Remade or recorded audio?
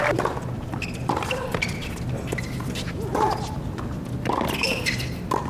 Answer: recorded